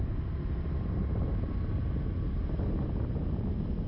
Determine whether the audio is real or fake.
real